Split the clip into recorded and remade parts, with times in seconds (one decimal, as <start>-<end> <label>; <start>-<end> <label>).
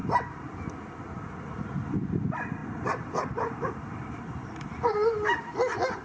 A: 0.0-0.7 remade; 0.7-2.6 recorded; 2.6-5.4 remade; 5.4-6.0 recorded